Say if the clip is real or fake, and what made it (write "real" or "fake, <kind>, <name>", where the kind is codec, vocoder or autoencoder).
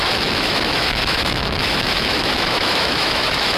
fake, autoencoder, DAC-VAE